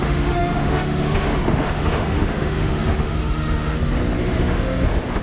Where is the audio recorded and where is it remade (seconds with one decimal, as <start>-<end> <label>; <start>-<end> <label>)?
0.0-3.7 remade; 3.7-4.2 recorded; 4.2-5.2 remade